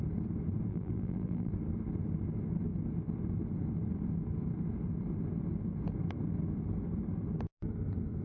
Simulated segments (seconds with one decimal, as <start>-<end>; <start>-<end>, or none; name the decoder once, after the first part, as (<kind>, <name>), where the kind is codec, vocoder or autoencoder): 0.7-1.5 (vocoder, BigVGAN v2)